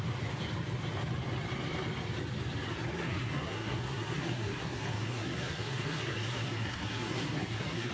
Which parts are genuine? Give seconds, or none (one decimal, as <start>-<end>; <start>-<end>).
0.0-3.0